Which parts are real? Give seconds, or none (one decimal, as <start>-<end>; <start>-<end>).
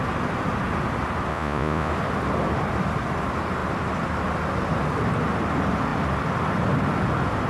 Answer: 0.0-1.3; 1.9-7.5